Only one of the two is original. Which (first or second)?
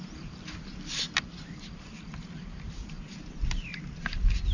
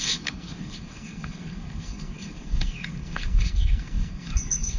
first